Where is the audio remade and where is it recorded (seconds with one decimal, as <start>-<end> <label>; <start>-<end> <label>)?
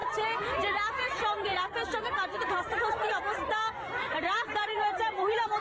0.0-1.0 recorded; 1.0-5.6 remade